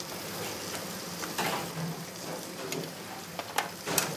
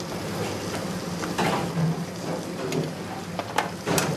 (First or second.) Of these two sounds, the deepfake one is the first